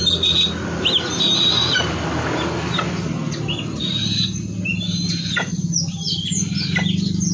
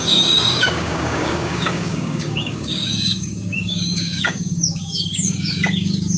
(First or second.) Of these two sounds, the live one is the first